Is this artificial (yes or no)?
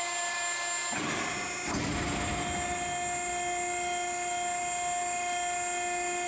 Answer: no